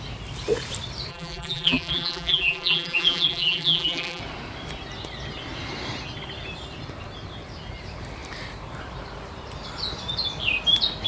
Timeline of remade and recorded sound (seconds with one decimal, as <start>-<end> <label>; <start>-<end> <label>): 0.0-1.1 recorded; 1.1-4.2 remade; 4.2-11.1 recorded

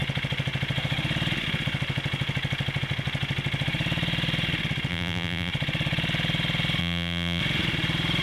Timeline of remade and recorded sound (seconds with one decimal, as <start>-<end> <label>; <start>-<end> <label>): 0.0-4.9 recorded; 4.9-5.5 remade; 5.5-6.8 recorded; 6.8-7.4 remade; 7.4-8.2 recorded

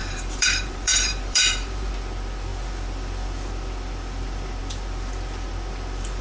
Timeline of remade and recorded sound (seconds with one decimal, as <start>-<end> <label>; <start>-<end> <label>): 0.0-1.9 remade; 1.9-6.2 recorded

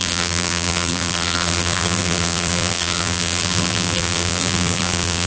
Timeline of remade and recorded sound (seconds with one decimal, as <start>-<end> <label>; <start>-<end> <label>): 0.0-5.3 remade

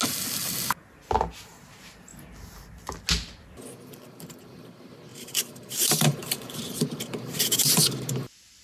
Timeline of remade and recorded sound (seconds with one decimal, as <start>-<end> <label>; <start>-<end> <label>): 0.0-5.1 recorded; 5.1-7.4 remade; 7.4-8.6 recorded

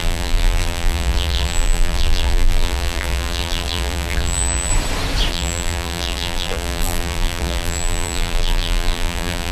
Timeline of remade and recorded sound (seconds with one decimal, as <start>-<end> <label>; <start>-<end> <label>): 0.0-4.7 remade; 4.7-5.3 recorded; 5.3-9.5 remade

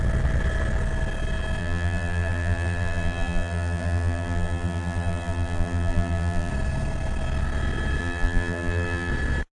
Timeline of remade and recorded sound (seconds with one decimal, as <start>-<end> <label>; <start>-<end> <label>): 0.0-1.6 recorded; 1.6-6.5 remade; 6.5-8.0 recorded; 8.0-9.1 remade; 9.1-9.5 recorded